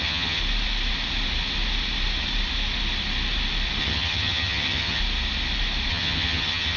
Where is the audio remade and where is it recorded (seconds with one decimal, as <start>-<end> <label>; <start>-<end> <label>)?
0.0-0.4 remade; 0.4-3.8 recorded; 3.8-5.0 remade; 5.0-5.9 recorded; 5.9-6.8 remade